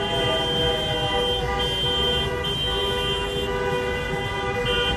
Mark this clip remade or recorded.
recorded